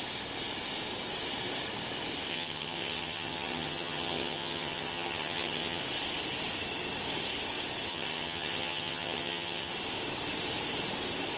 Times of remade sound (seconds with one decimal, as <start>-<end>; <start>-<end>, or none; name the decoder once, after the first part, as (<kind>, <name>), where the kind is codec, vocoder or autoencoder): 2.3-5.8 (vocoder, HiFi-GAN); 7.9-9.7